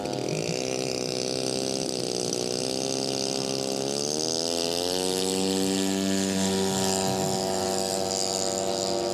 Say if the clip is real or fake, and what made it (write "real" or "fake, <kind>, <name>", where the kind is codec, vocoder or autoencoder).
real